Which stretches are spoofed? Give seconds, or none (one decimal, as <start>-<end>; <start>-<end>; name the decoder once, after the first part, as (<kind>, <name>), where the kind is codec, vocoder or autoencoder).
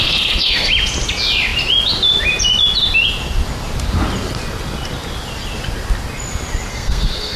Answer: 0.0-0.7 (codec, SNAC); 6.7-7.4